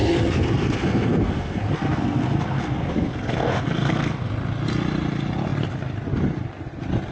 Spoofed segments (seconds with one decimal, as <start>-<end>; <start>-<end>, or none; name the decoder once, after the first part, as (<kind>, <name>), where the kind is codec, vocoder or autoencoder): 0.0-4.3 (codec, SNAC)